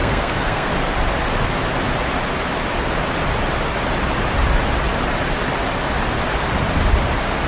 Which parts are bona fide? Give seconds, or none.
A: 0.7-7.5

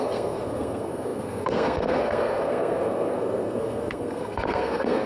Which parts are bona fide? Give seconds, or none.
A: none

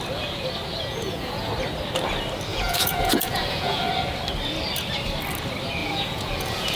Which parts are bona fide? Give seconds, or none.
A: 0.0-0.9; 1.5-2.5; 3.9-5.8